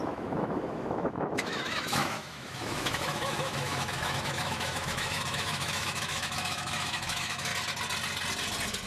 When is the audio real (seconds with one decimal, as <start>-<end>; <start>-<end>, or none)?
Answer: 7.5-8.9